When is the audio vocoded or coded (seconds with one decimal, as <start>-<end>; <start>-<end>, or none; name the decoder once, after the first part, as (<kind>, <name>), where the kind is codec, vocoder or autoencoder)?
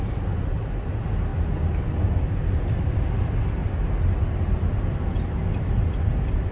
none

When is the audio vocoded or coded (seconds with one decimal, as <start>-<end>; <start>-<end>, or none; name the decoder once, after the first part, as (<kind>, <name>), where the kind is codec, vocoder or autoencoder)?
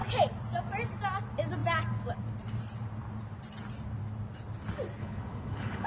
5.0-5.9 (codec, HILCodec)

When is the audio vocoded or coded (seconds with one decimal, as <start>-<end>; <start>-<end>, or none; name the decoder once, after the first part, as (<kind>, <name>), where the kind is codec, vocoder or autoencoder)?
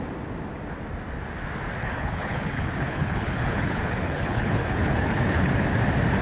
1.8-5.5 (codec, HILCodec)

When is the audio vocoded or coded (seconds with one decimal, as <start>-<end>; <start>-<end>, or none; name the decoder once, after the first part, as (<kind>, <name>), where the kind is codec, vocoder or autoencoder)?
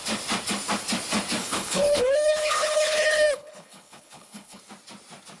1.4-4.6 (codec, HILCodec)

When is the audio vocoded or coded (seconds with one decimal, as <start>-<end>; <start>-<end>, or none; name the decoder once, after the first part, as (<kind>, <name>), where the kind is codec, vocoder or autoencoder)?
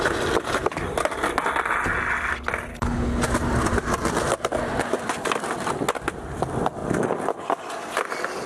2.7-3.2 (codec, HILCodec)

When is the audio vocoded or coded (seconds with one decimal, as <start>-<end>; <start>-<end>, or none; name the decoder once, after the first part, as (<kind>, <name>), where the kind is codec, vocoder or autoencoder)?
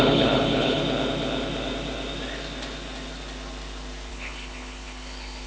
0.0-0.8 (codec, HILCodec); 4.1-5.5